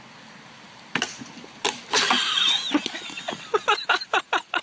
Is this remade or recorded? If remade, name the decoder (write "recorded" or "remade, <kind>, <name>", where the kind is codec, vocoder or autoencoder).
recorded